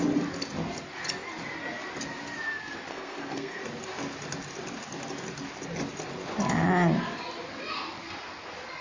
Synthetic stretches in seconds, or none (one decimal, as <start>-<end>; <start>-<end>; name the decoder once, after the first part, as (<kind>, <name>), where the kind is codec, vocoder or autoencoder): 2.9-3.6 (codec, SNAC)